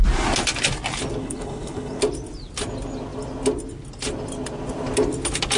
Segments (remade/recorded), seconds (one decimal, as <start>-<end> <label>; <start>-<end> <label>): 0.0-1.2 recorded; 1.2-2.0 remade; 2.0-5.6 recorded